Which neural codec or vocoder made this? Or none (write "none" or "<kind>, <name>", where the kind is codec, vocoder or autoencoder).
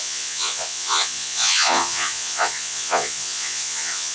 vocoder, Vocos